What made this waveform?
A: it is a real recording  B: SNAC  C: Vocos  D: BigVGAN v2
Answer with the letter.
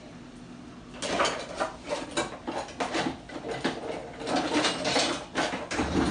A